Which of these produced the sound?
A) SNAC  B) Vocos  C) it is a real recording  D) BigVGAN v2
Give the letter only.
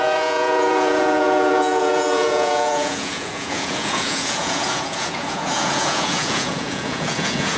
B